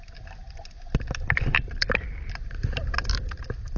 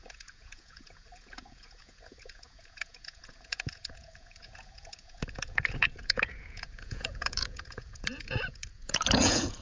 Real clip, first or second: first